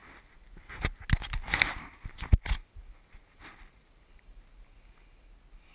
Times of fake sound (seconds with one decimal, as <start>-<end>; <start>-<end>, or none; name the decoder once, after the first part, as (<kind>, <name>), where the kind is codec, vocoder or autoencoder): none

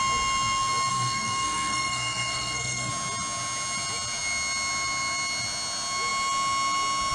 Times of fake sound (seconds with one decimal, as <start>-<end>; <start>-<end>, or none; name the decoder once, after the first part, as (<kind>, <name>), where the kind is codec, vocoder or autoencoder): 0.9-2.9 (codec, SNAC)

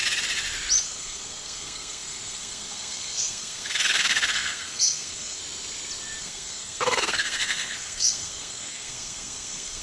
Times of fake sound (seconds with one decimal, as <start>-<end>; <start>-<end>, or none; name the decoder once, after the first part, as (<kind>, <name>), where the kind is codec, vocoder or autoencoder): 0.8-5.4 (codec, SNAC); 6.2-9.8

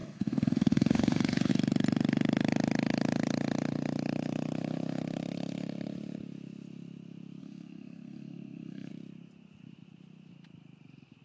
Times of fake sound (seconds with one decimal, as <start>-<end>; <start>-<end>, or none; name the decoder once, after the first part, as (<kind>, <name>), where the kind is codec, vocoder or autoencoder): 0.0-1.5 (codec, SNAC); 7.4-8.9

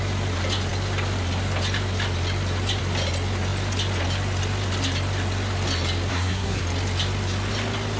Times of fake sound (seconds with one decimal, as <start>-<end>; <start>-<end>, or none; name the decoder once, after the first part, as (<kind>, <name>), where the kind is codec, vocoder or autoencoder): 6.1-6.6 (codec, SNAC)